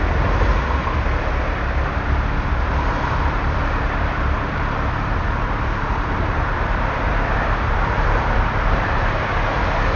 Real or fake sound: fake